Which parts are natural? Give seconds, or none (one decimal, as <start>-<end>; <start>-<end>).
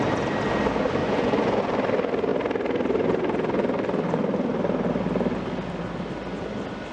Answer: 0.0-1.0; 1.6-6.9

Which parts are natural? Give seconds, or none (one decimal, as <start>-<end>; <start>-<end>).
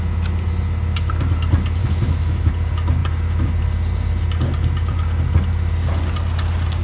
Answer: 0.0-1.8; 2.5-6.8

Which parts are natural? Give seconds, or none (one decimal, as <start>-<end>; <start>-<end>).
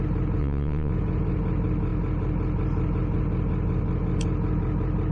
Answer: 0.0-0.4; 0.9-5.1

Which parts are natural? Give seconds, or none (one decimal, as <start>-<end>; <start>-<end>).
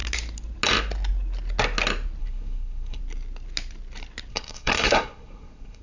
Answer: 0.0-2.2; 3.0-4.3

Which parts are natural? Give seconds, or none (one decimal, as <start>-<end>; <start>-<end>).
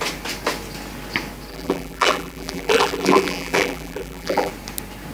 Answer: 0.0-1.5; 4.5-5.1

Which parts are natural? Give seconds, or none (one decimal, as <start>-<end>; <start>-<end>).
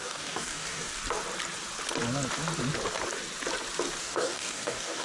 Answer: 1.0-4.0